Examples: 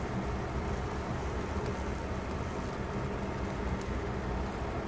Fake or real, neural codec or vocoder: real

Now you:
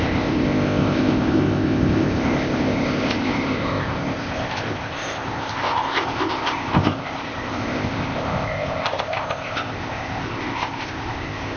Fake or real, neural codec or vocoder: fake, codec, ZipCodec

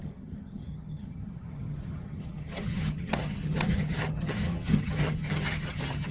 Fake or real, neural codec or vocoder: fake, vocoder, HiFi-GAN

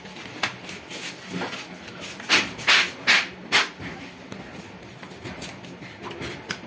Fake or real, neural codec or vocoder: real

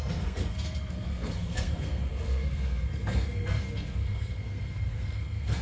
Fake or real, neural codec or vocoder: fake, codec, SNAC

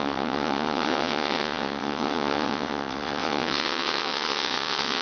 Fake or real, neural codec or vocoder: fake, vocoder, WaveNeXt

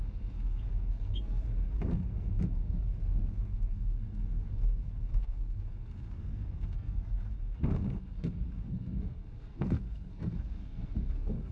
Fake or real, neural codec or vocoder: fake, codec, SNAC